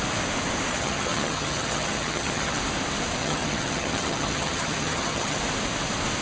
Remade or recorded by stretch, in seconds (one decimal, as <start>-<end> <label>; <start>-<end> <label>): 0.0-0.7 recorded; 0.7-2.6 remade; 2.6-3.2 recorded; 3.2-5.4 remade; 5.4-6.2 recorded